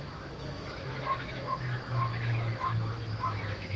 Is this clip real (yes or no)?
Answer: no